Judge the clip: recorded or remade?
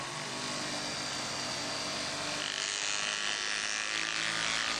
recorded